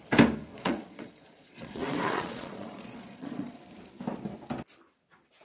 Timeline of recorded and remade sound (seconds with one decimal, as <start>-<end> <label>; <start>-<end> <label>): 0.0-0.5 recorded; 0.5-3.6 remade; 3.6-5.4 recorded